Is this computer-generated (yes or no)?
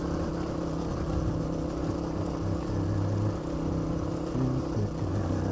no